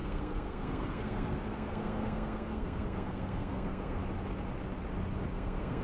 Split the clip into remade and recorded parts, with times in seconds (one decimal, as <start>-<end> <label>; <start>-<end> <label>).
0.0-4.0 remade; 4.0-5.3 recorded; 5.3-5.8 remade